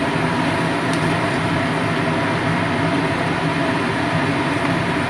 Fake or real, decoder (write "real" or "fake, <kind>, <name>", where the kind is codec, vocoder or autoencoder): real